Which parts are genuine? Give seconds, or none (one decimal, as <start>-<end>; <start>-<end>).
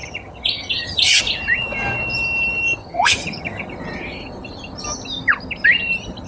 1.2-2.8; 3.7-6.3